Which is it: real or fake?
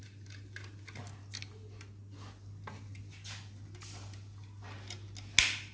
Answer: real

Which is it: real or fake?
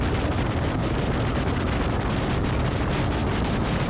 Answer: real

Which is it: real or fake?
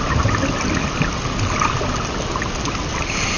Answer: real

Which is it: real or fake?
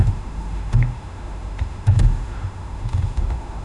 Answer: fake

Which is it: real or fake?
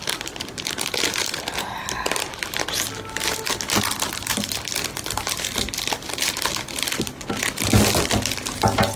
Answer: real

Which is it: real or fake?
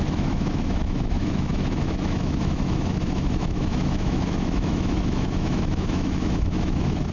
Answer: fake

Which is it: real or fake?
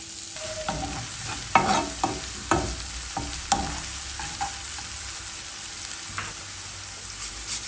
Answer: real